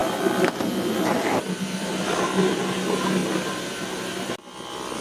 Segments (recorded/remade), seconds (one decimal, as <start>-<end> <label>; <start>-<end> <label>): 0.0-2.6 remade; 2.6-3.2 recorded; 3.2-4.3 remade; 4.3-5.0 recorded